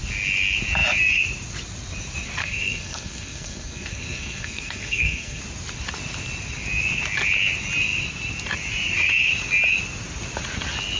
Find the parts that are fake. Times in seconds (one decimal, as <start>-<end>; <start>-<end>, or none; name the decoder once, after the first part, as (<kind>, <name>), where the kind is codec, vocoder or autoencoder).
2.4-5.4 (codec, SNAC)